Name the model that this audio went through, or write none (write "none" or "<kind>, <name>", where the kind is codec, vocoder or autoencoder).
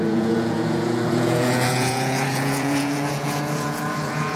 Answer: vocoder, Vocos